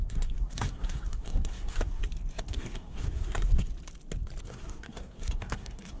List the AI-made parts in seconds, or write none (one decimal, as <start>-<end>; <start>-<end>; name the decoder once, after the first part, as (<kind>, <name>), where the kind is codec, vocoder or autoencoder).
0.0-2.0 (codec, SNAC); 2.5-3.7; 4.4-6.0